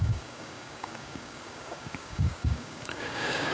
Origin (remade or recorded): remade